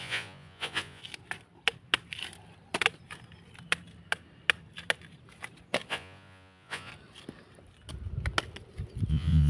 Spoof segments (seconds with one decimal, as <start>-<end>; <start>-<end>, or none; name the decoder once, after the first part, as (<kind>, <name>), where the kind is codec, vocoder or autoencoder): 0.0-1.0 (vocoder, Vocos); 5.9-6.9; 9.1-9.5